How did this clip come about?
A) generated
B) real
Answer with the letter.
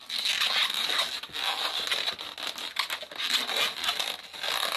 B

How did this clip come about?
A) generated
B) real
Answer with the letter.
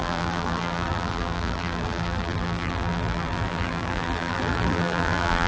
A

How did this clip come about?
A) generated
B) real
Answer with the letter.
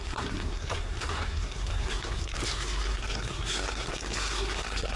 A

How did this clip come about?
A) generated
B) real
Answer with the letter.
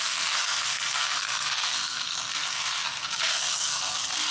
A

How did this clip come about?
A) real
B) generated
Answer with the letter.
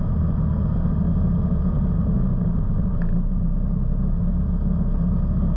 A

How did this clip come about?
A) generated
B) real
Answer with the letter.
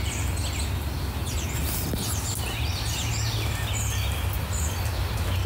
B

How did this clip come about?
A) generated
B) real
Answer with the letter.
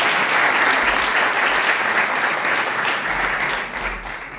B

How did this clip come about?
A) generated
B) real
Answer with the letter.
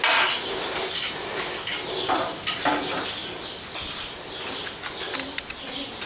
B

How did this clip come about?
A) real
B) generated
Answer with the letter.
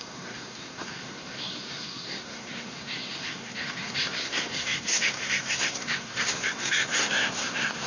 B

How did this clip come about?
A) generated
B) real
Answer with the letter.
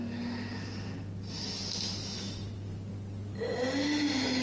B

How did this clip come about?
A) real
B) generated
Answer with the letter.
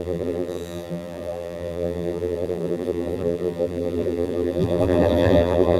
B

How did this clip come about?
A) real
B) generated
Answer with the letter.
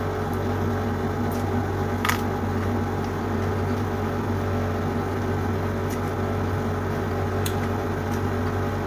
A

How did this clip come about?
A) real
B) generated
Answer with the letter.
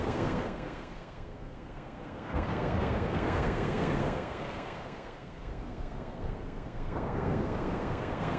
B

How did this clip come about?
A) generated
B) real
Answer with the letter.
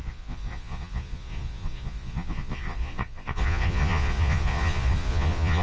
A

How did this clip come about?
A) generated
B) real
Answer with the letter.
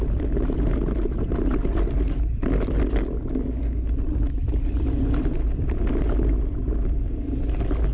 B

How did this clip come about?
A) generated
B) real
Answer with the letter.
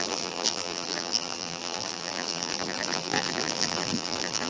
A